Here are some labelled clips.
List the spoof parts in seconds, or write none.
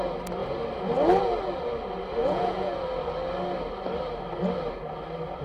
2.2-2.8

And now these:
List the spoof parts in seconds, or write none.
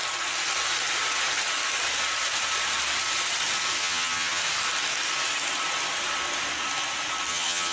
3.8-4.4; 7.3-7.7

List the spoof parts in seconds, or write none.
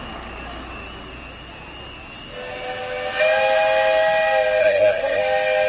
4.6-5.2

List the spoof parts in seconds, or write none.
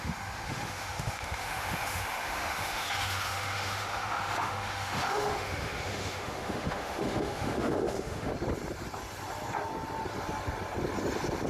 0.0-8.3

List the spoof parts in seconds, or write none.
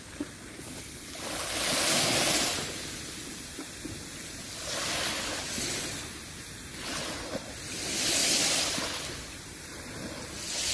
none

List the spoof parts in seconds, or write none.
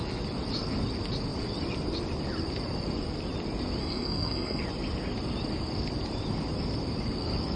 3.8-4.6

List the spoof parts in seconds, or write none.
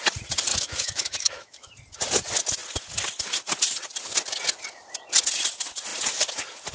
0.5-1.7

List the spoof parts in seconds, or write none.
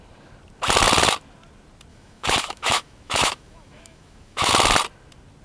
1.9-4.5